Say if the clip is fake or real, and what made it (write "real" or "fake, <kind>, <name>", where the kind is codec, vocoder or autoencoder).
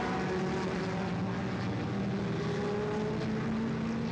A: real